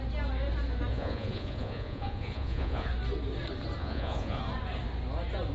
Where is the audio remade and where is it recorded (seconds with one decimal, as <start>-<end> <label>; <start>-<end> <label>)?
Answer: 0.0-0.9 recorded; 0.9-2.9 remade; 2.9-3.8 recorded; 3.8-4.4 remade; 4.4-5.5 recorded